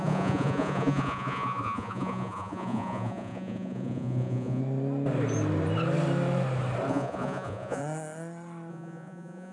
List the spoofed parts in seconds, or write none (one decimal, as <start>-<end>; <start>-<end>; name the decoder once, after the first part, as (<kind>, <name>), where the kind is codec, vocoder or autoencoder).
0.0-4.6 (vocoder, Vocos); 6.9-7.8; 8.7-9.5